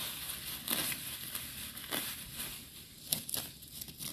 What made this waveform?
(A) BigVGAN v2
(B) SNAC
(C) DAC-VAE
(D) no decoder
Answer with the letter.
D